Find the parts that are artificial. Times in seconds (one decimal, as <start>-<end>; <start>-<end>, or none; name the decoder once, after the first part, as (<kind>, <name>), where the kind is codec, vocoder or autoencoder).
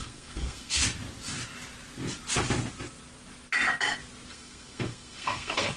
0.0-0.8 (codec, SNAC); 4.3-5.8